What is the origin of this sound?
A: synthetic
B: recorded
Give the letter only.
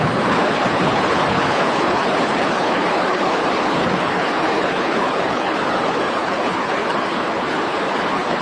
A